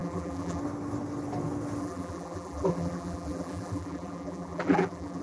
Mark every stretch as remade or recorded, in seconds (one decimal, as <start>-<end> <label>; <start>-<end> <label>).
0.0-0.6 remade; 0.6-1.8 recorded; 1.8-5.2 remade